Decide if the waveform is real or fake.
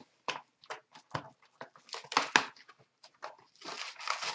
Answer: real